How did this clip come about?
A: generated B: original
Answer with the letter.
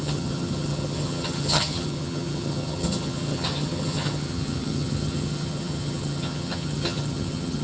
A